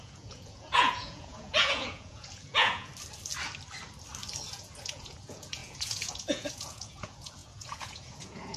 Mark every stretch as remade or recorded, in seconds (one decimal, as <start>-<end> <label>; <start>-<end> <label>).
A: 0.0-2.9 remade; 2.9-4.5 recorded; 4.5-8.6 remade